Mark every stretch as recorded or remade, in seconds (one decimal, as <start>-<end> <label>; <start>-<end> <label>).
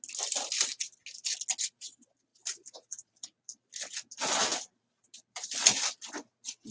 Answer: 0.0-2.3 recorded; 2.3-4.1 remade; 4.1-4.5 recorded; 4.5-5.9 remade; 5.9-6.7 recorded